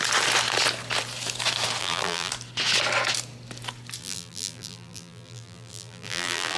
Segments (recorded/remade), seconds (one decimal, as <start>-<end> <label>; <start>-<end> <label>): 0.0-1.8 recorded; 1.8-2.3 remade; 2.3-4.0 recorded; 4.0-6.6 remade